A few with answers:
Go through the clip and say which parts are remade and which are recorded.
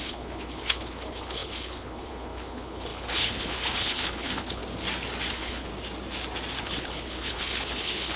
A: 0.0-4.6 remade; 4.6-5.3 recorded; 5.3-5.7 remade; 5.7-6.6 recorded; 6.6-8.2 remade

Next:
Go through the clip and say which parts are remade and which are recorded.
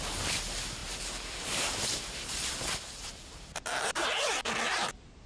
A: 0.0-5.3 remade